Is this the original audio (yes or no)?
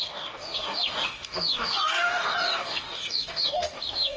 no